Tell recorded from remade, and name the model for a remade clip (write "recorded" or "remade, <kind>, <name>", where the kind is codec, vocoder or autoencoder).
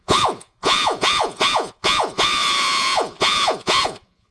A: remade, vocoder, Vocos